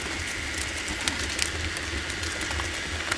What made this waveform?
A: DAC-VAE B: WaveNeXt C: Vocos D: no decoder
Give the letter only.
D